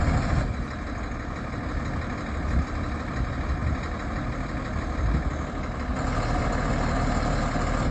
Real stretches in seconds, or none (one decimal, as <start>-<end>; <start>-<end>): 0.0-7.9